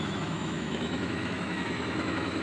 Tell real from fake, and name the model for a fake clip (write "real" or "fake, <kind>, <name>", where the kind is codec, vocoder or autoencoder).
fake, autoencoder, DAC-VAE